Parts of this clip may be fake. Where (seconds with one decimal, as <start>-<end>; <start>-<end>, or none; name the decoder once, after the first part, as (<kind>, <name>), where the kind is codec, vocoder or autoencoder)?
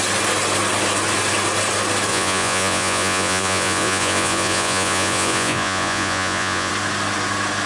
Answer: 2.1-6.7 (vocoder, Vocos)